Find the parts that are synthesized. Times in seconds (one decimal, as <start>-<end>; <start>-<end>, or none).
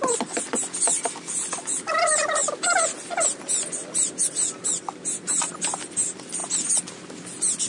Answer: none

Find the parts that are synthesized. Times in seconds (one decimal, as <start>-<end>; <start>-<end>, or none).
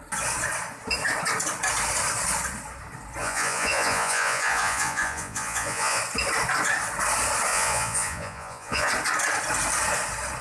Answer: 3.2-6.0; 7.5-8.9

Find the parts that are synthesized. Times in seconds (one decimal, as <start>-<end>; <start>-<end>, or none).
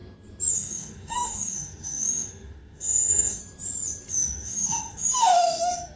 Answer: 0.5-3.4; 4.1-6.0